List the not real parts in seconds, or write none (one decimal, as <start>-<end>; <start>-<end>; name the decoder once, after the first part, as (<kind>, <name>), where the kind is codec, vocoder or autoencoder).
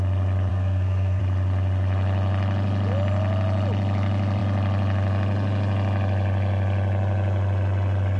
0.5-1.2 (codec, SNAC)